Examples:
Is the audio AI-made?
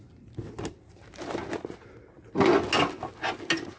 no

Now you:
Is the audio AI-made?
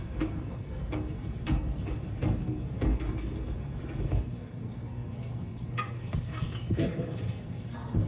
yes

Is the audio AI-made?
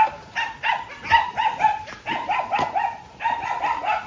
no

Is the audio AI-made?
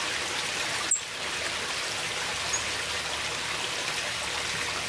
no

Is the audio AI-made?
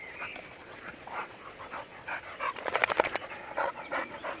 yes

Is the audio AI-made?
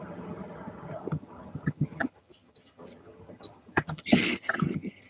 yes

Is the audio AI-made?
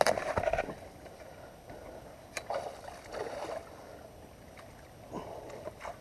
no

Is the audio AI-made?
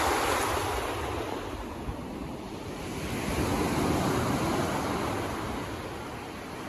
no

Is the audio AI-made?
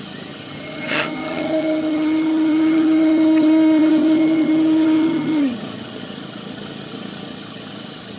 yes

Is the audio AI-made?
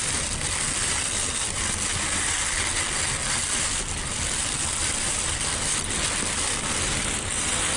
no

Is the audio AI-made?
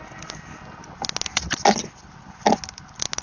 no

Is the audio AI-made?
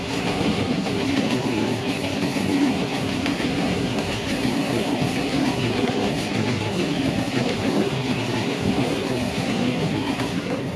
yes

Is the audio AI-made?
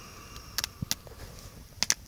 no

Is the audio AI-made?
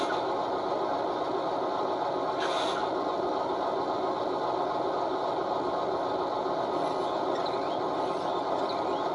no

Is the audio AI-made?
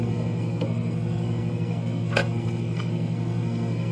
yes